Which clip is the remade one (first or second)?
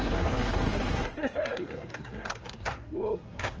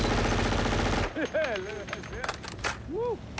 first